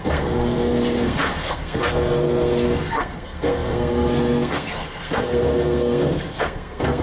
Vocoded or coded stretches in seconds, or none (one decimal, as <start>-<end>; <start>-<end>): 0.0-7.0